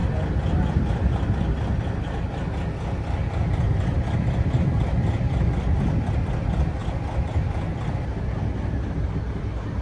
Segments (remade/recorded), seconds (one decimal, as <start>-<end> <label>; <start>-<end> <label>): 0.0-1.3 remade; 1.3-9.8 recorded